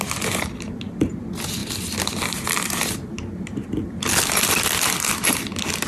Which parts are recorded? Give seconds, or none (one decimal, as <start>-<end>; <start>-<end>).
0.0-1.6; 5.1-5.9